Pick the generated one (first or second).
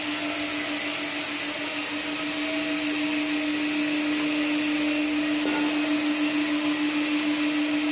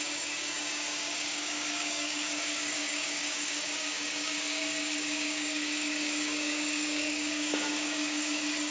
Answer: second